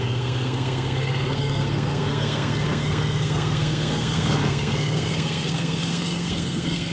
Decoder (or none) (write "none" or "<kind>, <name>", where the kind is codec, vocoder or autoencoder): codec, SNAC